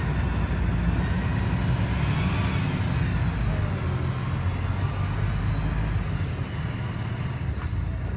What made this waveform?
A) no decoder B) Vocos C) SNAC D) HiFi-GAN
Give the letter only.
A